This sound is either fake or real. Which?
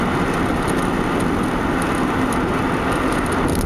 real